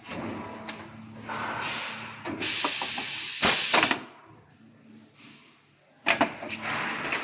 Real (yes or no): yes